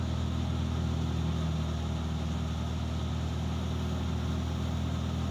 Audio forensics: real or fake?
real